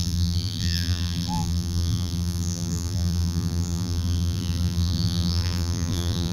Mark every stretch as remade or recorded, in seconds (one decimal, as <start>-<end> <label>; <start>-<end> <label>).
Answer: 0.0-6.3 remade